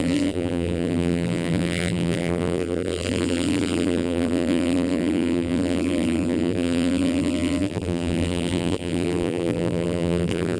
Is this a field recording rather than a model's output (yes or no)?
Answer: no